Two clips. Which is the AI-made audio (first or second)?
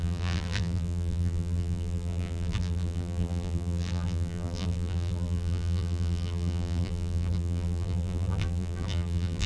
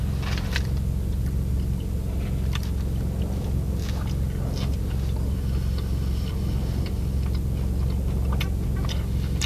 first